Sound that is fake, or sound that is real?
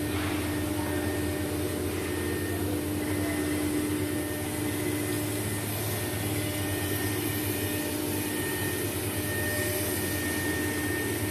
real